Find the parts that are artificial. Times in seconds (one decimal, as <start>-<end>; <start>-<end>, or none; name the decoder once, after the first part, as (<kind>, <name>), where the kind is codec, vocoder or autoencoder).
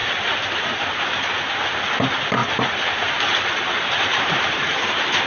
4.1-4.8 (vocoder, BigVGAN v2)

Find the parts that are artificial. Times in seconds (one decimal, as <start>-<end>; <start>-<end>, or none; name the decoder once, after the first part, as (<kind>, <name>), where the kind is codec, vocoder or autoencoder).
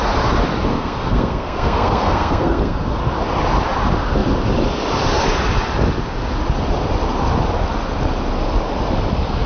0.7-3.0 (codec, SNAC)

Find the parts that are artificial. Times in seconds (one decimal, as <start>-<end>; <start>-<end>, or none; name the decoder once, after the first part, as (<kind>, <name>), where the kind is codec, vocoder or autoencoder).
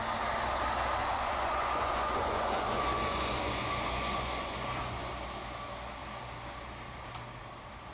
1.0-5.1 (vocoder, Vocos)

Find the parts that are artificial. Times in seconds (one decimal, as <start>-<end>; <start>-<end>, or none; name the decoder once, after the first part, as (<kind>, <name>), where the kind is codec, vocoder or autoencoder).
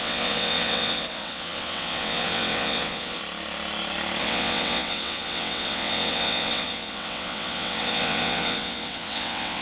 0.0-3.2 (vocoder, WaveNeXt); 4.2-9.6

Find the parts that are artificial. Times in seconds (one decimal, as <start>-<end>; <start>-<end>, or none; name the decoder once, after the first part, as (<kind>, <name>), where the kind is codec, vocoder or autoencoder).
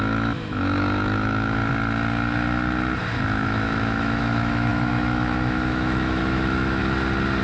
0.0-1.6 (autoencoder, DAC-VAE); 3.2-6.8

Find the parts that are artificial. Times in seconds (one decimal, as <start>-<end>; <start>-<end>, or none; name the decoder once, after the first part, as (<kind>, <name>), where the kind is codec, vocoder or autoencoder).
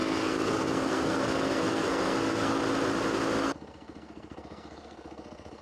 0.0-2.6 (codec, SNAC); 3.4-5.6